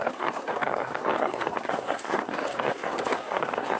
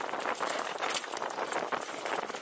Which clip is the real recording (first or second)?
second